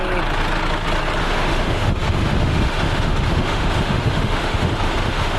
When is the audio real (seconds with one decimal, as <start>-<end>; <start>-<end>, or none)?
0.0-1.2